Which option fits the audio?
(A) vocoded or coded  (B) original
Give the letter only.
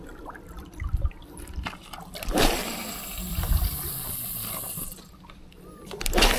A